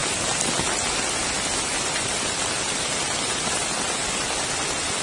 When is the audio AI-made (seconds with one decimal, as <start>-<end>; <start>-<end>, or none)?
none